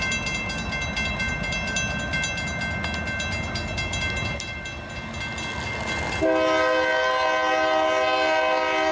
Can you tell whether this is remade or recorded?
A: recorded